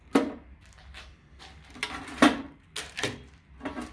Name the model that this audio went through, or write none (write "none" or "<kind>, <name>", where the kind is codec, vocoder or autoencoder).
none